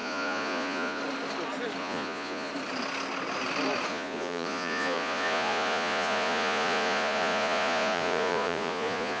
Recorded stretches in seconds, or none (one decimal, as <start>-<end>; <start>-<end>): 1.0-1.8; 2.5-3.9